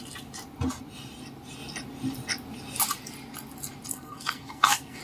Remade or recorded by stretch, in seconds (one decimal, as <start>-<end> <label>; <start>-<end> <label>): 0.0-3.9 recorded; 3.9-5.0 remade